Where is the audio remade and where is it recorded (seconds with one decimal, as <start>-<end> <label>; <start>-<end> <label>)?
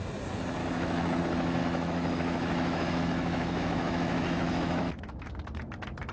0.0-0.6 recorded; 0.6-1.2 remade; 1.2-1.6 recorded; 1.6-5.3 remade; 5.3-6.1 recorded